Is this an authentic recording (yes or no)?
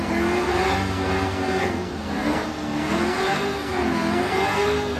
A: no